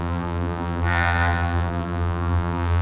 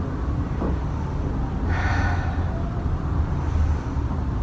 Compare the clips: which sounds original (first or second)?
second